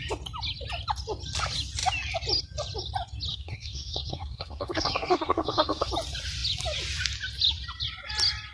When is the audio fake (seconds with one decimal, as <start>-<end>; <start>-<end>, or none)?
3.3-5.9